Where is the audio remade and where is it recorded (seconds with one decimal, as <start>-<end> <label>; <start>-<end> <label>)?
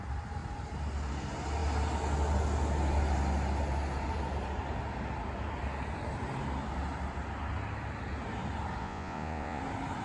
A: 0.0-8.8 recorded; 8.8-9.6 remade; 9.6-10.0 recorded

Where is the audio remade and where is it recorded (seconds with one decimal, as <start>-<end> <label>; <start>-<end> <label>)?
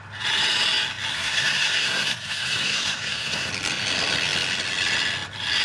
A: 0.0-1.1 recorded; 1.1-3.5 remade; 3.5-5.6 recorded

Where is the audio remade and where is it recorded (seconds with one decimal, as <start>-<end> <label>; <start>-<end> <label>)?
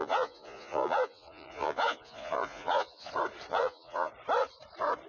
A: 0.0-3.1 remade; 3.1-3.5 recorded; 3.5-4.1 remade; 4.1-5.1 recorded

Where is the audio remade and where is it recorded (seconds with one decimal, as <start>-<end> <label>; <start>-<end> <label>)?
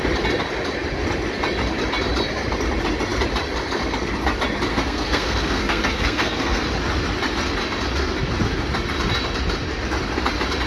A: 0.0-4.7 recorded; 4.7-6.6 remade; 6.6-10.7 recorded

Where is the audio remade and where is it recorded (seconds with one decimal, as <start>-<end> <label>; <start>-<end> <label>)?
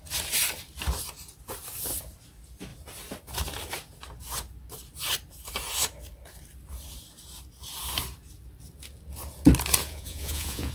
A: 0.0-9.8 recorded; 9.8-10.7 remade